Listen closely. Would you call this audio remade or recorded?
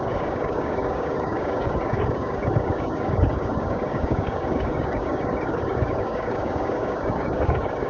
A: remade